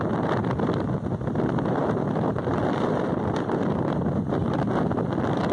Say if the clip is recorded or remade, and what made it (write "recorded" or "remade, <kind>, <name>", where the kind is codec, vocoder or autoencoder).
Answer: recorded